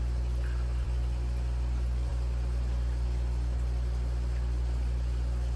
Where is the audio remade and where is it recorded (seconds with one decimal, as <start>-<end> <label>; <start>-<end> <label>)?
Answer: 0.0-5.6 recorded